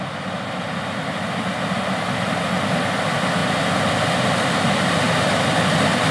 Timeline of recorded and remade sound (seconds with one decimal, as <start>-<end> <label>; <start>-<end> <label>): 0.0-6.1 recorded